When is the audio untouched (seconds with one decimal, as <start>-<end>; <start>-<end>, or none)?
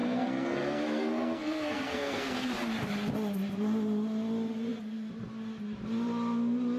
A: 2.5-6.8